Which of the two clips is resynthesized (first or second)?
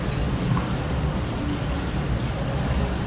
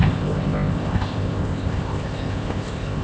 second